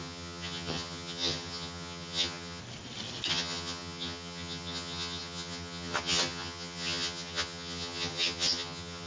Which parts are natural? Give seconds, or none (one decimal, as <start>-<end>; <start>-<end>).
2.6-3.3